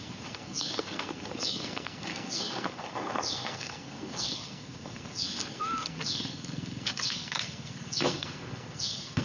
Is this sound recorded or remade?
remade